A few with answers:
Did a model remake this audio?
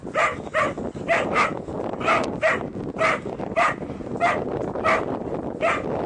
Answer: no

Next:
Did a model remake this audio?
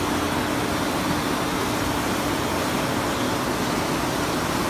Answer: no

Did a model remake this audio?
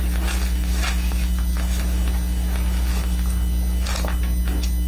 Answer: no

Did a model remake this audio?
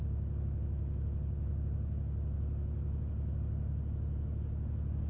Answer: no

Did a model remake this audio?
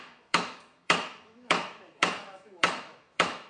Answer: yes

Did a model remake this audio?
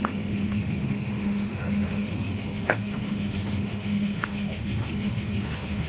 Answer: yes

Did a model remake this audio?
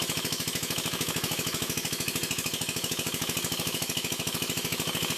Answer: yes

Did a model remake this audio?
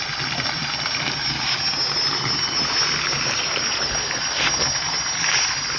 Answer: no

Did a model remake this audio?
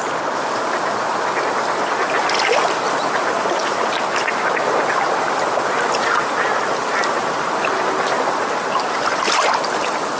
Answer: no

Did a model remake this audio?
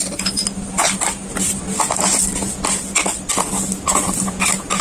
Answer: no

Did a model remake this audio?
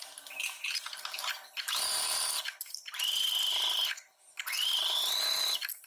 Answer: no